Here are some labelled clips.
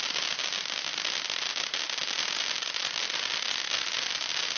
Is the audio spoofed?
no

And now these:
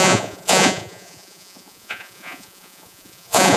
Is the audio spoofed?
yes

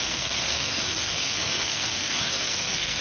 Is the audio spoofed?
yes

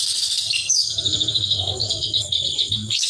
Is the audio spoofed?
yes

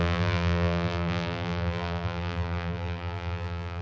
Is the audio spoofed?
yes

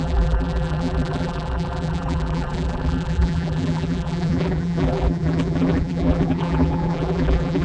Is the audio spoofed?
yes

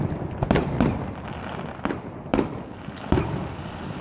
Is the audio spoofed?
no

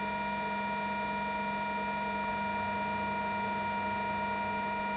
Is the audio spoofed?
no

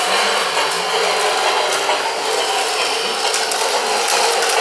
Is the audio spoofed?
no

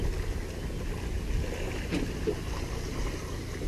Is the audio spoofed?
no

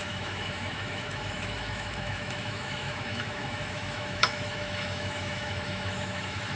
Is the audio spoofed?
yes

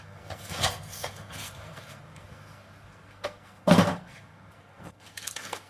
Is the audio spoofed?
yes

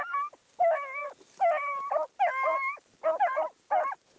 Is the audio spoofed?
no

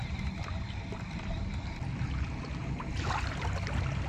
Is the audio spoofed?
no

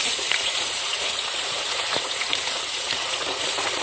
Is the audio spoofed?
yes